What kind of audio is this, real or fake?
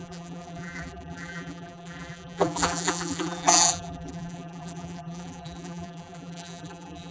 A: fake